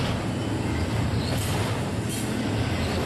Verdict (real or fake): real